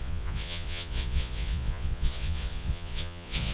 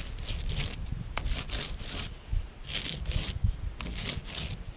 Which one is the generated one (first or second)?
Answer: first